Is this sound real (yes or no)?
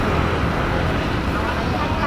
yes